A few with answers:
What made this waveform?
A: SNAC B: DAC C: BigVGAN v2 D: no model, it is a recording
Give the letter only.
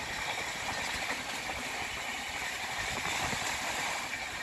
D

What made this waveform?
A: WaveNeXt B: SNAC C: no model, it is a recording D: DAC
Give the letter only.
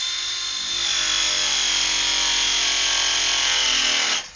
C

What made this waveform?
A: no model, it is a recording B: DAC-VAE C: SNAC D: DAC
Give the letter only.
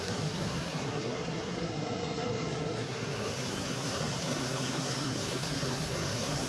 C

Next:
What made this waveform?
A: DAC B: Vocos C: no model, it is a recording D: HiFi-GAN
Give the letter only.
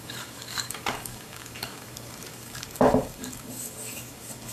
A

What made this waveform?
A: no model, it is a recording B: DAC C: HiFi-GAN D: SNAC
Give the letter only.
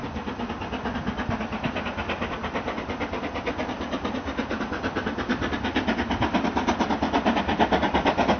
A